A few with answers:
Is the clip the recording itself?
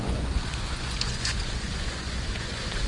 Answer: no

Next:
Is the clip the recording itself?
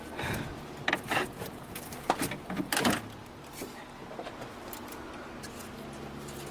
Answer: yes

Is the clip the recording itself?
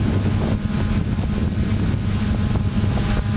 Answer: yes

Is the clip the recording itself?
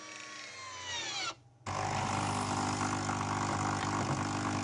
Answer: yes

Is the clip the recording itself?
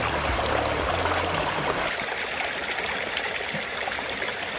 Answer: yes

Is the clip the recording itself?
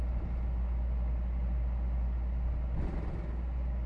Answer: yes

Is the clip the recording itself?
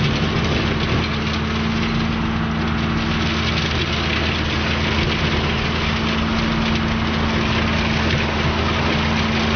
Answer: yes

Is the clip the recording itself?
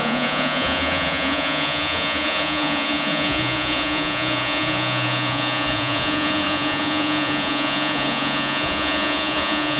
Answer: no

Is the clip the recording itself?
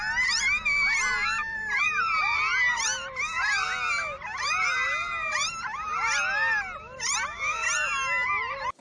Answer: yes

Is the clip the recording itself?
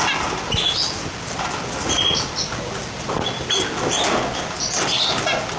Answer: yes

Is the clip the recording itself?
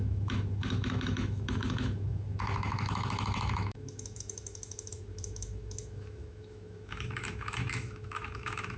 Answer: no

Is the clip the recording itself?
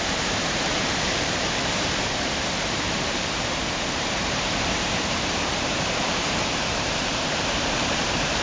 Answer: no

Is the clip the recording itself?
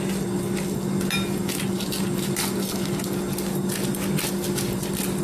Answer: yes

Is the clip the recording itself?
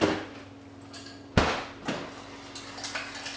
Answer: yes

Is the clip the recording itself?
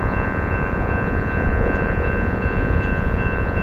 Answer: no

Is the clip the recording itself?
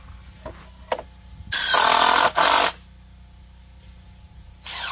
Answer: yes